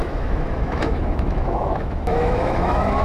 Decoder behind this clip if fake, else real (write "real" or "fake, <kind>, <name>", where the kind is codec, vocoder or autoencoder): fake, autoencoder, DAC-VAE